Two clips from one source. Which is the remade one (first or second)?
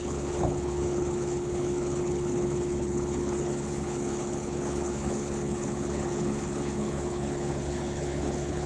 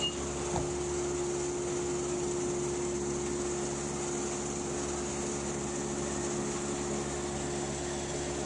first